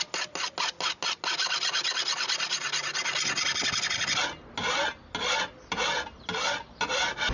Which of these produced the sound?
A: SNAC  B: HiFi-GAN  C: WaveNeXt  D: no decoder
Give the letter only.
D